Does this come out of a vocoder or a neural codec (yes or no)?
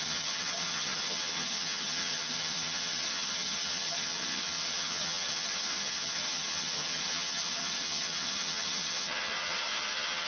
yes